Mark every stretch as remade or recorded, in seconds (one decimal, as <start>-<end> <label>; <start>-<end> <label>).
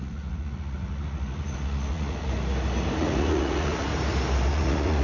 0.0-2.3 remade; 2.3-3.0 recorded; 3.0-3.9 remade; 3.9-4.5 recorded; 4.5-5.0 remade